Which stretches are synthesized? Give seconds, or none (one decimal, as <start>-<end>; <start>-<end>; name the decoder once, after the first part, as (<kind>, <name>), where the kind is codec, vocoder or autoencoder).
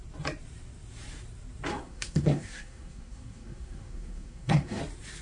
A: 1.7-4.8 (codec, SNAC)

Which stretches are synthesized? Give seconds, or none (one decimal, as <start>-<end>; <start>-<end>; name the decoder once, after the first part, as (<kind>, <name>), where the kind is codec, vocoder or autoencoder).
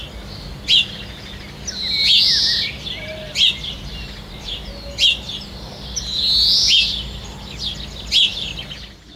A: none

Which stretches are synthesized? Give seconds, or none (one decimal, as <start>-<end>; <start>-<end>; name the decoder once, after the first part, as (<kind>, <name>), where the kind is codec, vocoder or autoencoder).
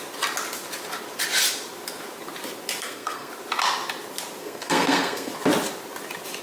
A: 2.8-3.3 (codec, SNAC); 4.4-5.3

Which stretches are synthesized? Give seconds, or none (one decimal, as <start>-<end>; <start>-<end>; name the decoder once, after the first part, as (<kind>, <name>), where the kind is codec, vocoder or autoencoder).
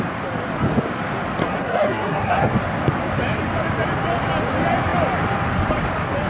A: 1.4-2.5 (codec, SNAC)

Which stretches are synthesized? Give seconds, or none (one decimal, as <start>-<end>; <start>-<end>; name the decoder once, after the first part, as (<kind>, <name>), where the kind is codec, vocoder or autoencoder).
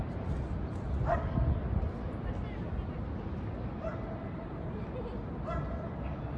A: none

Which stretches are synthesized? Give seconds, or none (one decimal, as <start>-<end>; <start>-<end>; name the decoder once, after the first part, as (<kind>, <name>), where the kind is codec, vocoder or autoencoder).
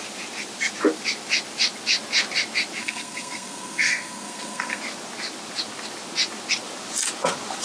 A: 2.8-4.8 (codec, SNAC)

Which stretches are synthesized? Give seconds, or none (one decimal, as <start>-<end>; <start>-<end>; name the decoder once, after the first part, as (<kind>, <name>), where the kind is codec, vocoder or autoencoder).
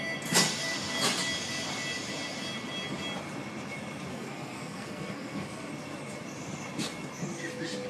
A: 4.1-5.7 (codec, SNAC)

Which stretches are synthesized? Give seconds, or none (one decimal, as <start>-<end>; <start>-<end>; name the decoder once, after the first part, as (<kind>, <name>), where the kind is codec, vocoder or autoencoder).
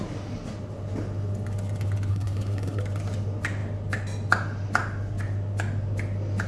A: 2.1-2.8 (codec, SNAC)